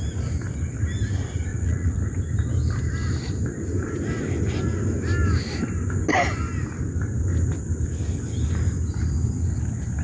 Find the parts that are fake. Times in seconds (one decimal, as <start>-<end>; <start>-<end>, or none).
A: 1.5-2.0